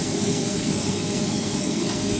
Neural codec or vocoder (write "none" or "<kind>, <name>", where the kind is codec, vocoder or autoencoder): codec, SNAC